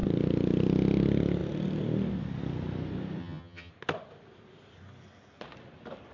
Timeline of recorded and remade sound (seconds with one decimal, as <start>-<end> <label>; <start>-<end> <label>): 0.0-3.2 recorded; 3.2-3.7 remade; 3.7-6.1 recorded